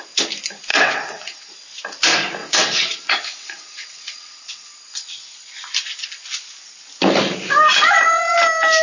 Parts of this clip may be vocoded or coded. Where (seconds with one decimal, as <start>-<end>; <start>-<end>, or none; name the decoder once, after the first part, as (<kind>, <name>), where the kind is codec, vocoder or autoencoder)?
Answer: 0.7-1.5 (vocoder, WaveNeXt); 2.4-4.7